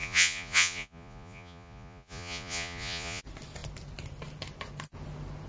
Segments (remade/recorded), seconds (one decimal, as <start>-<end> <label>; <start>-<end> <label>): 0.0-3.2 remade; 3.2-5.5 recorded

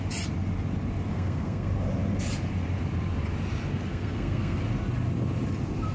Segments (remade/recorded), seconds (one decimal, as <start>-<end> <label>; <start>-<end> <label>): 0.0-1.1 recorded; 1.1-1.7 remade; 1.7-3.9 recorded; 3.9-4.6 remade; 4.6-5.9 recorded